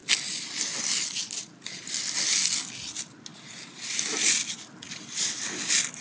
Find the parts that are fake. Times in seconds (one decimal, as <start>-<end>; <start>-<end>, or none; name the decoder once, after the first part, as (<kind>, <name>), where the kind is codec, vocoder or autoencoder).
none